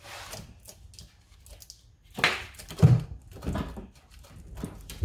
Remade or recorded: recorded